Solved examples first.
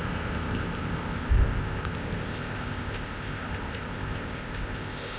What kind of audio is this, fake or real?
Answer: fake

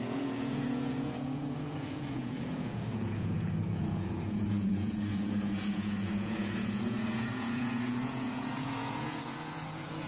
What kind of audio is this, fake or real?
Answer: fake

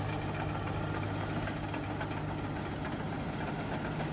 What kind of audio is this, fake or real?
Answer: real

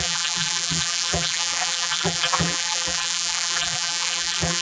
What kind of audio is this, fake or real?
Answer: fake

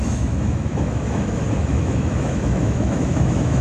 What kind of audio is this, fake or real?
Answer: fake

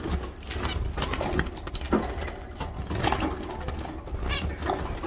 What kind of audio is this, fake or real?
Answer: real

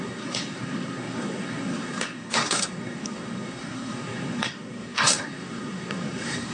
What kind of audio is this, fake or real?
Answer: fake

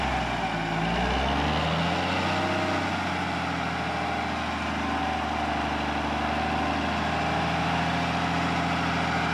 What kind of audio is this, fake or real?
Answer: real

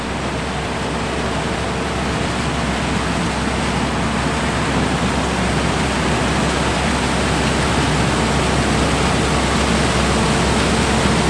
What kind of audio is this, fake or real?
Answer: real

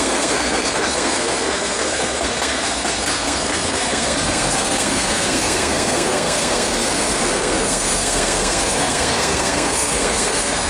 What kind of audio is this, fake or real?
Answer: fake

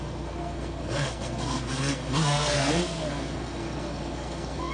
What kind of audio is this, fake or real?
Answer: fake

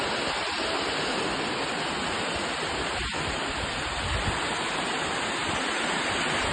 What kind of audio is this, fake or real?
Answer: real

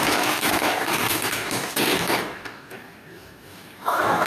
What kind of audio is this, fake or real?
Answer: fake